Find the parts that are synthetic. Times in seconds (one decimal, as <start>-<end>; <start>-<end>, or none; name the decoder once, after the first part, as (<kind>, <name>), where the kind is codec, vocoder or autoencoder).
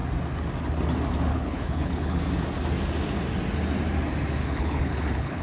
1.3-2.2 (codec, HILCodec); 4.4-5.4